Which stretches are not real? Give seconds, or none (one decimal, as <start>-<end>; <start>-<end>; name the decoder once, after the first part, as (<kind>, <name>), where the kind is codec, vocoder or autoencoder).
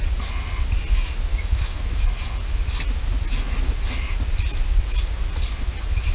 1.3-1.8 (autoencoder, DAC-VAE)